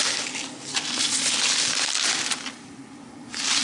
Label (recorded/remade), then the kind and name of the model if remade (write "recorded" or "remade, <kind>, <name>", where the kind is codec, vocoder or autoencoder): recorded